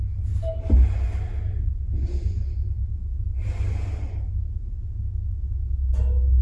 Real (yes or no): yes